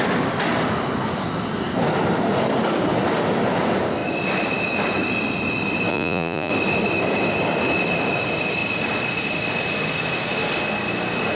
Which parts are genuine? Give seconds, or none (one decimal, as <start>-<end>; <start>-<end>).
0.0-5.9; 6.5-11.3